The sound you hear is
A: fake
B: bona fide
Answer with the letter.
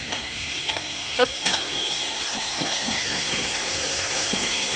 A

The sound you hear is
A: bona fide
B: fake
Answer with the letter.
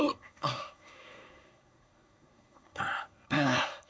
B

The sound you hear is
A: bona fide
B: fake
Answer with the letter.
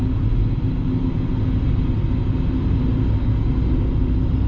A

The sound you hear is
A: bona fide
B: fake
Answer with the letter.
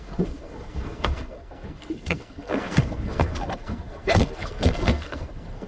B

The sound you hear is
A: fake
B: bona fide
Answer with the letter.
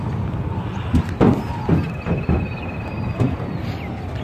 B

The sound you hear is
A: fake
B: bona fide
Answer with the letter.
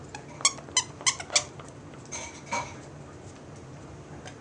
B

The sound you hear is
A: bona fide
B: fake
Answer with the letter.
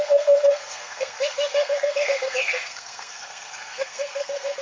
B